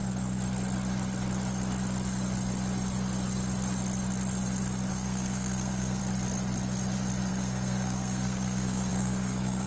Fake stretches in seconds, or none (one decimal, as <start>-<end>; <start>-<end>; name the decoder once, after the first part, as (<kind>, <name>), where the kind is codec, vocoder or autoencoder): 4.9-6.0 (codec, SNAC); 7.3-9.7